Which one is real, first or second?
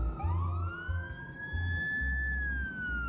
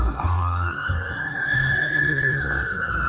first